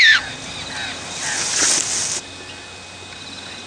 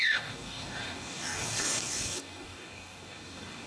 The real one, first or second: first